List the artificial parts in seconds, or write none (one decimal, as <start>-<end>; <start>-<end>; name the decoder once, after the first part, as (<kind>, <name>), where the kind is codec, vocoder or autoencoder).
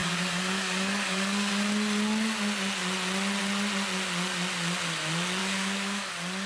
0.0-1.5 (codec, DAC); 5.4-6.1